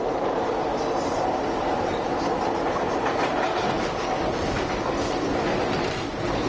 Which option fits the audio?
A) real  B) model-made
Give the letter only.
A